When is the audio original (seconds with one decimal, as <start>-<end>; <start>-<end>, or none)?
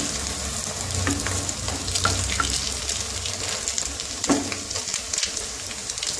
0.0-6.2